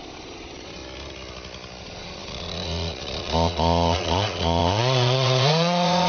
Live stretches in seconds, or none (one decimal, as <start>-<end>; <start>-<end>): 0.8-1.8